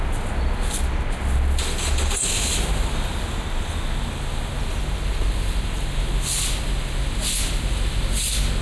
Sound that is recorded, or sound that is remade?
recorded